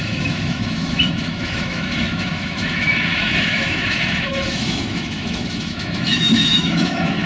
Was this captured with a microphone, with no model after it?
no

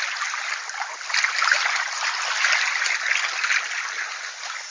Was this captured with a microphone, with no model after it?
yes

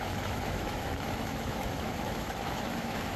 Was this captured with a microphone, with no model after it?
no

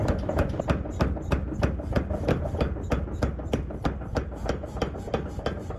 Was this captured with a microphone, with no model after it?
yes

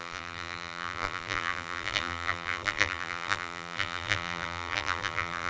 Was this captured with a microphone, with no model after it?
no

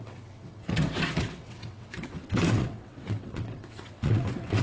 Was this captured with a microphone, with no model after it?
no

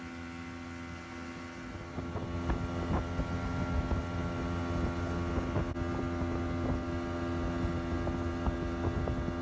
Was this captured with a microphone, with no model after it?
yes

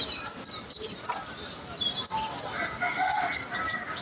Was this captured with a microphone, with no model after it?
yes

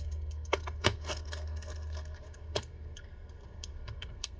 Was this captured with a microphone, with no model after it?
no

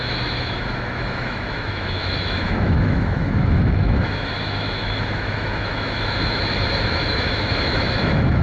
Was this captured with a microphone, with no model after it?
no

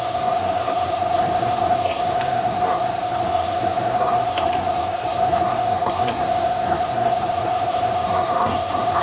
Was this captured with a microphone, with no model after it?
no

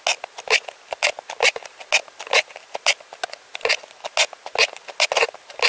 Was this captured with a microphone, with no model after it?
yes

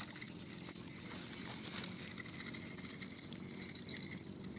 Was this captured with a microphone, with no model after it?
yes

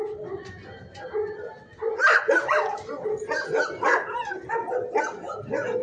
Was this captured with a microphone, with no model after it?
yes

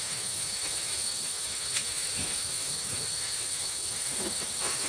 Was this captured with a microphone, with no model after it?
no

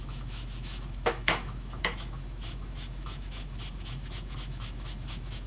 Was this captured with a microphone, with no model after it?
no